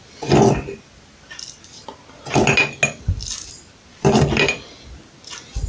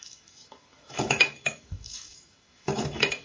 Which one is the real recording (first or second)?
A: first